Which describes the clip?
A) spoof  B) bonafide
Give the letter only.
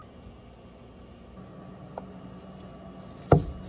B